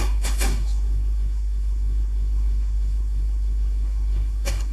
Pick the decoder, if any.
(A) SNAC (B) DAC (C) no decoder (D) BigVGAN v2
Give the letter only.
A